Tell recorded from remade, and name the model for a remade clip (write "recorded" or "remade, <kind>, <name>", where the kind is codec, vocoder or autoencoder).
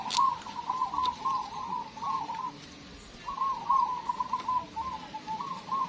recorded